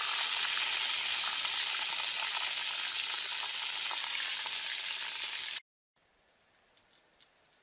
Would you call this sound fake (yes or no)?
no